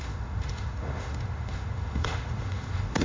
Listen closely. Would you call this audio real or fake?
fake